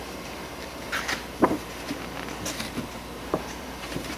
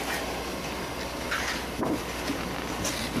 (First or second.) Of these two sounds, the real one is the second